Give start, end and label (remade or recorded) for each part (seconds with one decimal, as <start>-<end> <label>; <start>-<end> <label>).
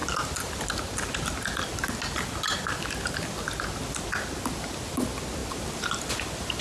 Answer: 0.0-5.4 recorded; 5.4-6.0 remade; 6.0-6.6 recorded